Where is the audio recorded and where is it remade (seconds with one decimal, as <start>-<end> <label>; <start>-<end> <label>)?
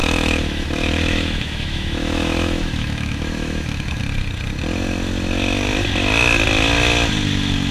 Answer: 0.0-4.0 remade; 4.0-7.7 recorded